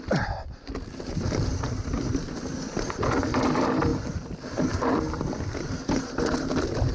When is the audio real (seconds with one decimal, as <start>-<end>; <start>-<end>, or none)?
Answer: 0.0-6.9